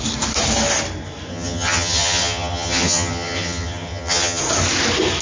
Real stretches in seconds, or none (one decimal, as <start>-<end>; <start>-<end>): 0.0-1.3; 4.4-5.2